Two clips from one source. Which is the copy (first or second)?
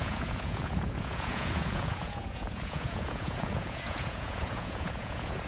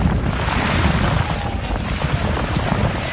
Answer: first